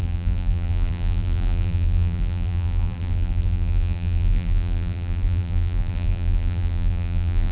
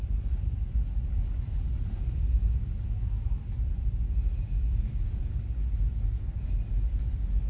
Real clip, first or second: second